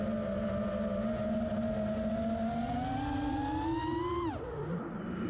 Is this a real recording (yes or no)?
yes